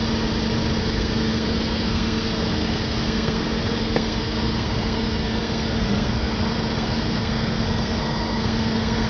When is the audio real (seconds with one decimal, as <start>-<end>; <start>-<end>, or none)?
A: 0.0-0.8